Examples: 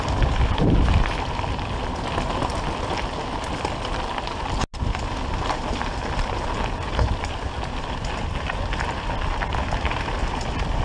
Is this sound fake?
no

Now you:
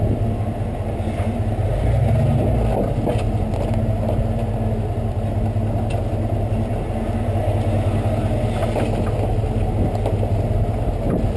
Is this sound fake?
no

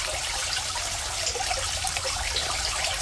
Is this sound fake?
no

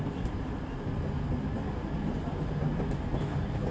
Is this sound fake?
no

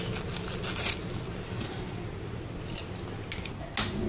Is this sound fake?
no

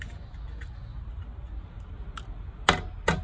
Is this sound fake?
no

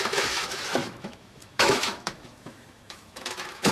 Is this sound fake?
yes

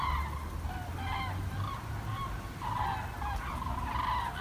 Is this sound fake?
no